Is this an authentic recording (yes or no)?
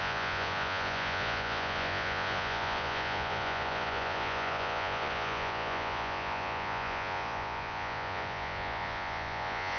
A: no